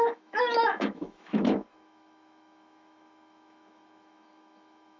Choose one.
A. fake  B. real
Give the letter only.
A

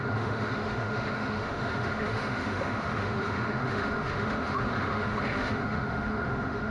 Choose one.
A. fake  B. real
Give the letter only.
A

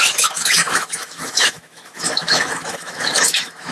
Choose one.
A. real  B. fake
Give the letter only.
B